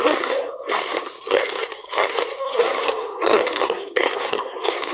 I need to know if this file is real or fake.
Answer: fake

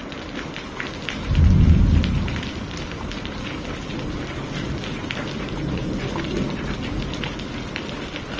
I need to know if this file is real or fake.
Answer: real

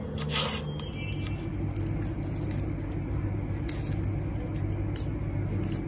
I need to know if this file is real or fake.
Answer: real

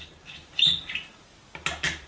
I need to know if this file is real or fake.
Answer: real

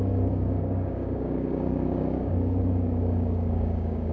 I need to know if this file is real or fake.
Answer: fake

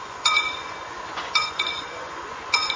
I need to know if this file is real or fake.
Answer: fake